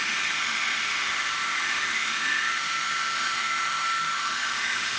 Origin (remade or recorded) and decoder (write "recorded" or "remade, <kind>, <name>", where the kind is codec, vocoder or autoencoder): remade, autoencoder, DAC-VAE